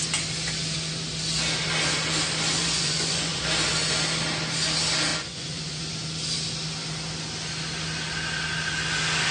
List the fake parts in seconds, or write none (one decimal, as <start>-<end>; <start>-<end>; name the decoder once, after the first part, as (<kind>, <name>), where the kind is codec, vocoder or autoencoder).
2.6-3.4 (vocoder, Vocos); 5.1-5.8